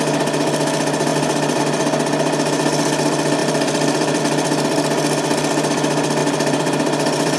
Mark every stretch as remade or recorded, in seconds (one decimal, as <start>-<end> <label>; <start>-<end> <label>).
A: 0.0-3.4 recorded; 3.4-4.2 remade; 4.2-6.2 recorded; 6.2-7.4 remade